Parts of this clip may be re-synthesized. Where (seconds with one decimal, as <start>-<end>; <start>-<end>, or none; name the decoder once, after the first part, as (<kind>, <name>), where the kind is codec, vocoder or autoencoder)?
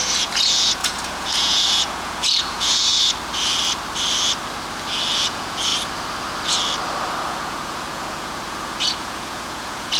0.0-2.9 (vocoder, Vocos); 5.3-5.7; 7.2-10.0